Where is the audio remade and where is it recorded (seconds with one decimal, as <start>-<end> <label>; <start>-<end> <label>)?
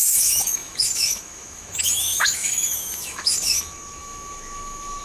0.0-5.0 remade